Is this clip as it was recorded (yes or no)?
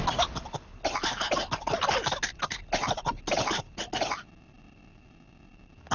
yes